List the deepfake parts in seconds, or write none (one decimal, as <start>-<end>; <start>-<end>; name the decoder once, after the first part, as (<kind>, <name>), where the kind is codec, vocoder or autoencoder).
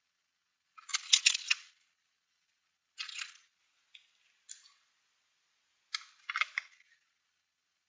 0.0-3.6 (vocoder, Vocos); 6.6-7.9